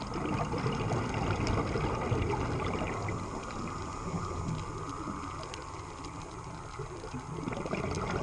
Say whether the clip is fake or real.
real